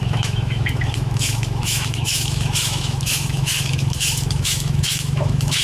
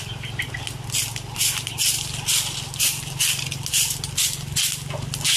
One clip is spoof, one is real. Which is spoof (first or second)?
first